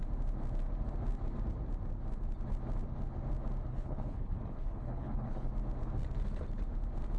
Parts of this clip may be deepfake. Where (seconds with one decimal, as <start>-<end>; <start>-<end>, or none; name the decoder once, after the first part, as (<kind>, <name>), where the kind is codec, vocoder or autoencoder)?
3.7-5.5 (codec, HILCodec)